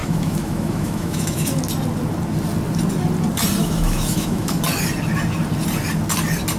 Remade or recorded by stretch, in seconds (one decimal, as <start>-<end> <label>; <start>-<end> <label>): 0.0-1.6 remade; 1.6-3.6 recorded; 3.6-4.6 remade; 4.6-6.6 recorded

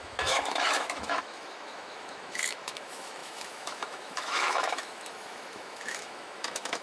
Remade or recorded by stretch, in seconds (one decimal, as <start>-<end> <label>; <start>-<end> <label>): 0.0-6.8 remade

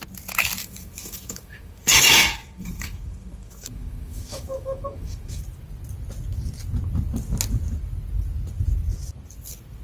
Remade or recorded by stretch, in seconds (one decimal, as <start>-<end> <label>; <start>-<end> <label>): 0.0-0.6 recorded; 0.6-5.4 remade; 5.4-9.8 recorded